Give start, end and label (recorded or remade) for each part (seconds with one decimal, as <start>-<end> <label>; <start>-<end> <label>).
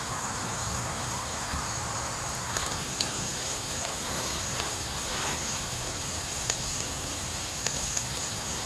0.0-1.6 remade; 1.6-2.4 recorded; 2.4-8.7 remade